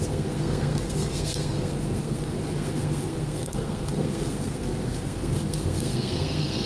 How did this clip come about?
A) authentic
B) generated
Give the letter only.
B